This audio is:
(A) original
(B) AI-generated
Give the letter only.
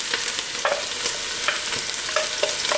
A